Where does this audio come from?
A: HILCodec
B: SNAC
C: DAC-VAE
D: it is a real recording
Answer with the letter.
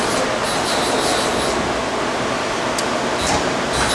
D